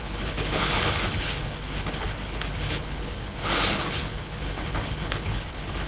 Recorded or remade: remade